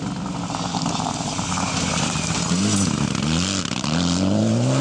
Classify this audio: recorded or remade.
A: recorded